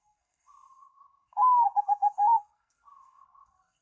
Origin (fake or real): fake